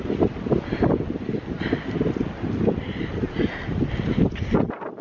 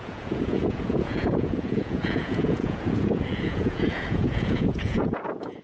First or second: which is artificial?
second